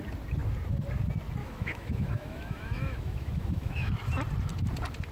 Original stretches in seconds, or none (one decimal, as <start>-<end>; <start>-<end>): 0.0-1.4; 3.9-5.1